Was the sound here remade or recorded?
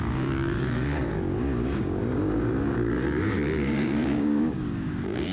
remade